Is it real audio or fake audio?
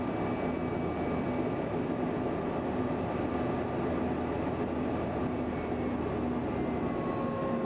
real